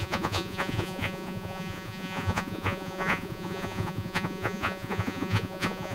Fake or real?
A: fake